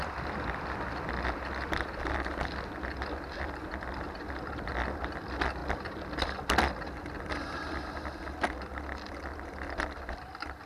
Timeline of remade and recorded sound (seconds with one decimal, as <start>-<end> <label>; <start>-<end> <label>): 0.0-10.7 recorded